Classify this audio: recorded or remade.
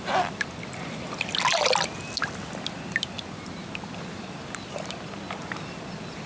recorded